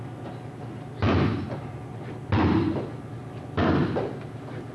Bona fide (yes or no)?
yes